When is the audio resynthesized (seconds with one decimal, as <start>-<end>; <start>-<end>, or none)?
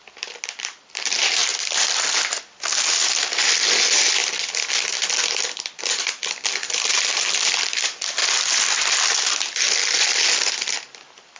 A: 1.4-2.1; 4.2-5.8; 6.6-7.3; 8.2-10.7